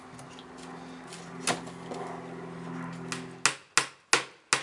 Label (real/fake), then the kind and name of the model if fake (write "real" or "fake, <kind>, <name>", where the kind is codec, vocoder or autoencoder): real